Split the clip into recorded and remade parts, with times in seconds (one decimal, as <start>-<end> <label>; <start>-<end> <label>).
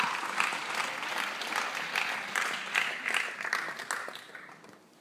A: 0.0-5.0 recorded